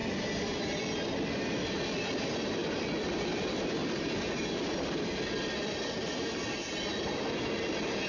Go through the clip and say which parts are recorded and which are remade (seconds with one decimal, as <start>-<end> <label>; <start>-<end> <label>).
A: 0.0-8.1 recorded